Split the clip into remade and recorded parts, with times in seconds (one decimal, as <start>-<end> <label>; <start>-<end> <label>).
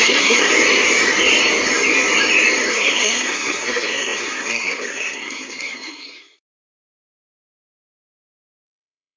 0.0-0.5 remade; 0.5-2.7 recorded; 2.7-9.2 remade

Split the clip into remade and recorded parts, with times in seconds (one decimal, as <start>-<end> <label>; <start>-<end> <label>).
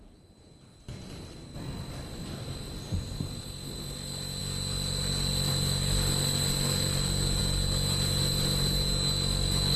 0.0-9.8 recorded